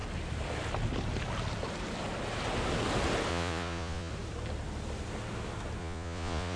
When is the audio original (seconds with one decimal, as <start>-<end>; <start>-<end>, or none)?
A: 0.0-3.3; 4.1-5.8